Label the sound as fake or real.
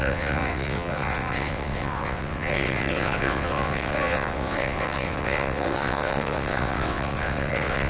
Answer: fake